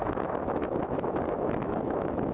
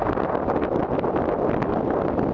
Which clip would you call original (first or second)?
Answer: second